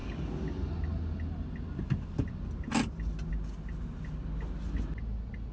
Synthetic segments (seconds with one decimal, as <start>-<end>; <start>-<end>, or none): none